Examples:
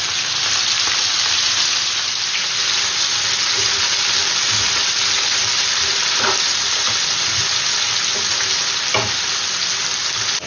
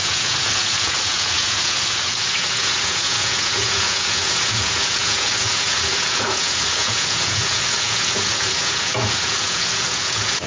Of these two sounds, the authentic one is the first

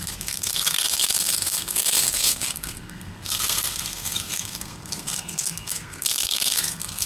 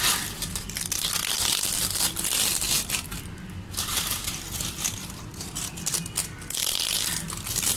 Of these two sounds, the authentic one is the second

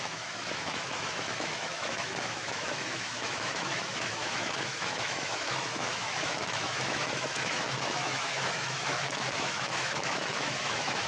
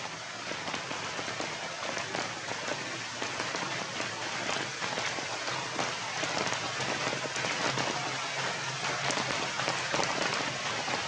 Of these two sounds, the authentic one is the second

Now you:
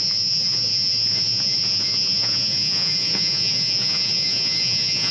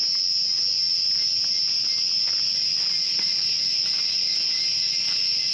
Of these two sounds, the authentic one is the second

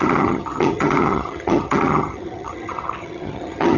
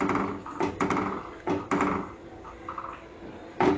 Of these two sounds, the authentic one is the second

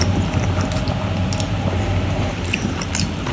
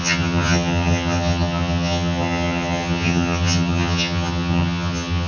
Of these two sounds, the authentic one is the first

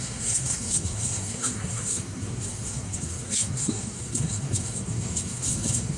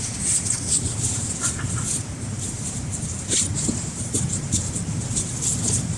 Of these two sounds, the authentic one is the second